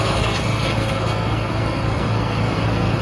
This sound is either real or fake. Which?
fake